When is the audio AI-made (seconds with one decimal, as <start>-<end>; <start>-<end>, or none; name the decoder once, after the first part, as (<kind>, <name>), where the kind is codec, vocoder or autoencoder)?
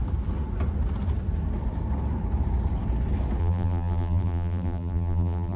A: 3.4-5.6 (vocoder, BigVGAN v2)